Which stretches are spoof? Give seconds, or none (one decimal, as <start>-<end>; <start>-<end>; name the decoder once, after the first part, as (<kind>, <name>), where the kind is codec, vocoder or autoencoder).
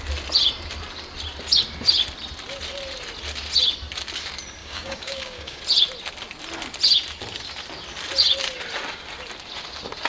4.6-5.6 (codec, DAC)